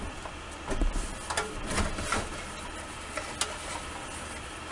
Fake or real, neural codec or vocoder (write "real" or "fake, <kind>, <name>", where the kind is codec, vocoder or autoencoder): real